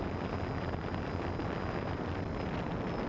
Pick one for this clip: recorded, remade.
recorded